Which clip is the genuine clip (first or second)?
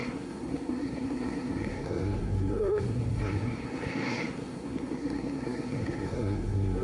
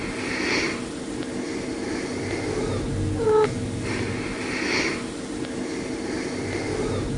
second